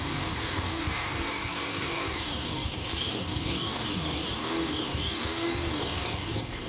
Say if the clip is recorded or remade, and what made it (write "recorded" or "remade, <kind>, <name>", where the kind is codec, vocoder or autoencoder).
remade, codec, DAC